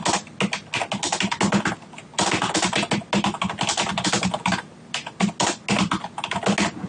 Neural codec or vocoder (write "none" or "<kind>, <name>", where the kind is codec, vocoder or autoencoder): none